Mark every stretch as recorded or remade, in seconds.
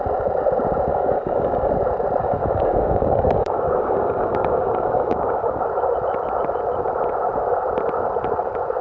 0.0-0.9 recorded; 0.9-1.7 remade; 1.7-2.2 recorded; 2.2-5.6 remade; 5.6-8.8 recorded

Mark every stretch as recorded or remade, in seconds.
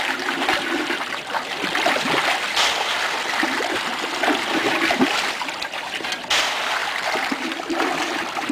0.0-6.8 recorded; 6.8-7.5 remade; 7.5-8.5 recorded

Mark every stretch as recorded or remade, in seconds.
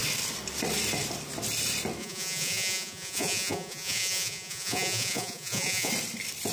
0.0-2.0 recorded; 2.0-5.9 remade; 5.9-6.5 recorded